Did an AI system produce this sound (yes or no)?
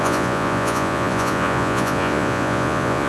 yes